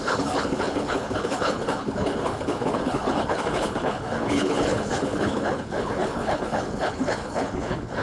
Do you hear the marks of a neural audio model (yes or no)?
yes